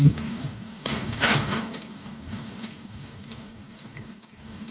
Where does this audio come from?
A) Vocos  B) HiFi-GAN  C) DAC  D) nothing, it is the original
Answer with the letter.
C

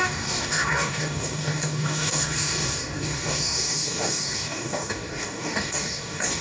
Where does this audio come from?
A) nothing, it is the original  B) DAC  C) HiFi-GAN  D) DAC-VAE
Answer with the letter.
B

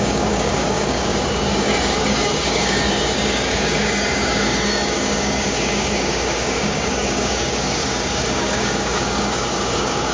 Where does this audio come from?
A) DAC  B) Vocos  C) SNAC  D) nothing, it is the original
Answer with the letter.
A